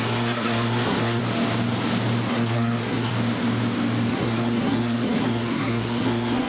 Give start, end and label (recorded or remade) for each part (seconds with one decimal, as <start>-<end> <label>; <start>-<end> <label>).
0.0-1.2 remade; 1.2-2.3 recorded; 2.3-3.1 remade; 3.1-4.1 recorded; 4.1-6.5 remade